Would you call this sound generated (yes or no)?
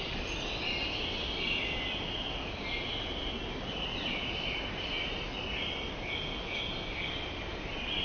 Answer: no